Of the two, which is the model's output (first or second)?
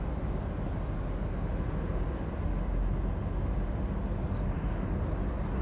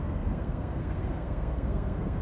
second